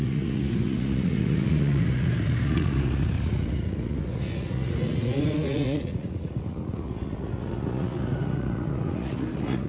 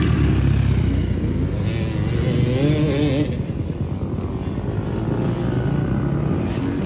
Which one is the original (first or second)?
second